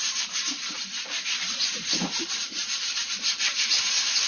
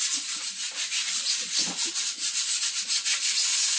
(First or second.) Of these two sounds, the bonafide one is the second